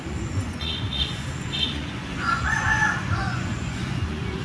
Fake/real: fake